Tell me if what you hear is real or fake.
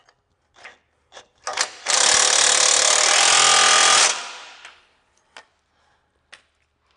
real